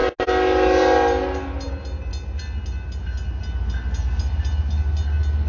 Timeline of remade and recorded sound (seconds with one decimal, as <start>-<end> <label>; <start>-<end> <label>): 0.0-5.5 recorded